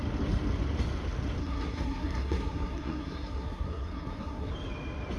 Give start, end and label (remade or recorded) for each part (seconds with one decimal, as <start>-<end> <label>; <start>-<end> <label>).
0.0-1.4 recorded; 1.4-4.5 remade; 4.5-5.2 recorded